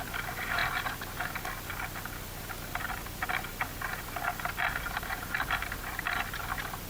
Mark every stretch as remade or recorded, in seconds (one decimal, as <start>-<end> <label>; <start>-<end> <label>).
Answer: 0.0-6.9 recorded